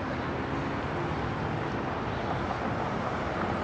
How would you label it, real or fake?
real